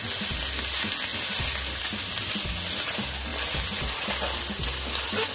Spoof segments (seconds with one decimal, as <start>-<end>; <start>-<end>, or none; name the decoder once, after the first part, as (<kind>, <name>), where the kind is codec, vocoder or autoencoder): none